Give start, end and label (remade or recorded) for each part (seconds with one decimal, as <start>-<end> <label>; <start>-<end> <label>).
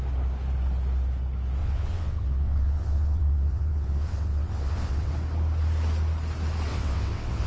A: 0.0-1.6 recorded; 1.6-5.1 remade; 5.1-6.7 recorded; 6.7-7.5 remade